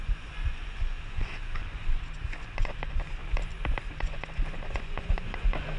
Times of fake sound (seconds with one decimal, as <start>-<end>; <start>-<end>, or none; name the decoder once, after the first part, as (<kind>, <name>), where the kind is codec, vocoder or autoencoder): 0.0-3.2 (vocoder, Vocos); 3.9-5.8